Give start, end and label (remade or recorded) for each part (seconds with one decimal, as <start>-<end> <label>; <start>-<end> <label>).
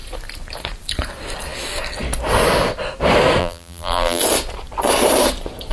0.0-3.4 recorded; 3.4-4.2 remade; 4.2-5.7 recorded